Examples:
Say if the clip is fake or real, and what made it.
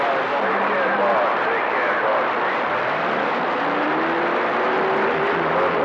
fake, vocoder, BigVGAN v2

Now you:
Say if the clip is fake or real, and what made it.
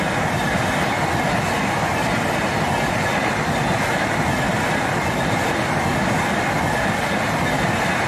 real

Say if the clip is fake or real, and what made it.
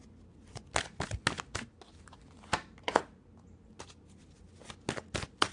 real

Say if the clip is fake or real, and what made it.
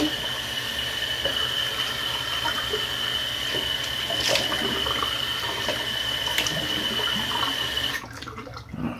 real